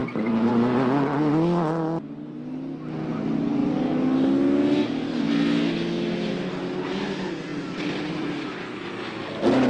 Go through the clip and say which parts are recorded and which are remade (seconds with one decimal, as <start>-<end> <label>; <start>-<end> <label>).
0.0-0.5 remade; 0.5-9.7 recorded